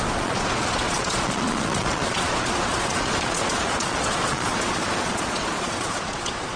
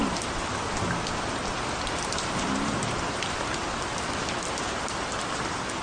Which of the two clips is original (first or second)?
second